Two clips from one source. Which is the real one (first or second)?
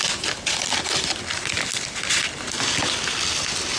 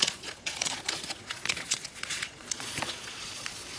first